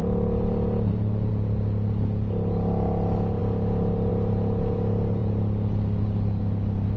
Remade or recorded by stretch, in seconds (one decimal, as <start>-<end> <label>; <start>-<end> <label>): 0.0-7.0 recorded